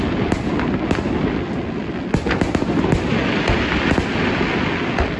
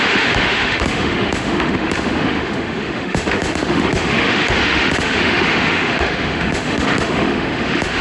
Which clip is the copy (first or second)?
second